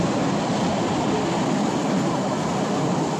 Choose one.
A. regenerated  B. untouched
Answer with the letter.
B